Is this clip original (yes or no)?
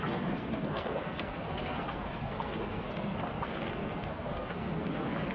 no